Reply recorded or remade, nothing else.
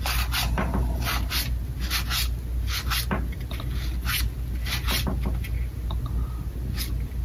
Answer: recorded